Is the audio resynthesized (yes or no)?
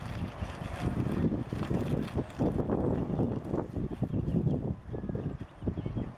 no